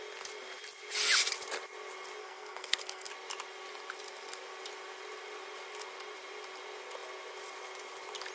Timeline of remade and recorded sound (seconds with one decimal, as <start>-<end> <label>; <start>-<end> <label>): 0.0-2.2 recorded; 2.2-3.1 remade; 3.1-8.3 recorded